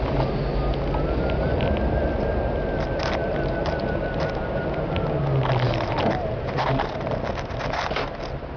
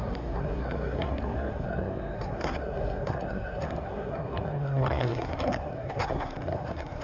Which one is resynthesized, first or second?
second